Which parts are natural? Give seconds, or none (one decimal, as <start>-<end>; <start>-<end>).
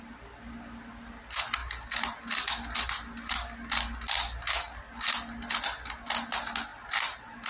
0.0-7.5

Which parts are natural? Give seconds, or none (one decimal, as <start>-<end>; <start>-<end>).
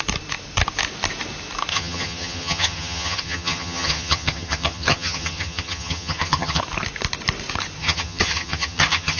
0.0-1.7; 6.6-7.8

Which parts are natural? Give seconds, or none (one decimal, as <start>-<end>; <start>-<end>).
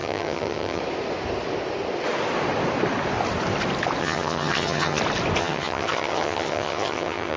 0.8-4.0; 5.0-5.4